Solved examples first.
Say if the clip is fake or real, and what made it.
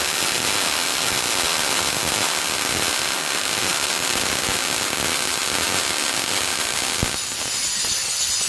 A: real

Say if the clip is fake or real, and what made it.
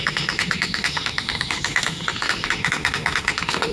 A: fake, autoencoder, DAC-VAE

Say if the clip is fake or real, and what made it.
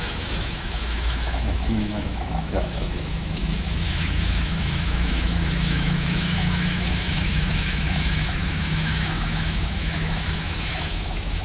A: fake, autoencoder, DAC-VAE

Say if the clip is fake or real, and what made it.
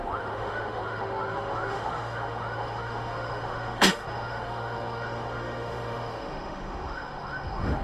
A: fake, autoencoder, DAC-VAE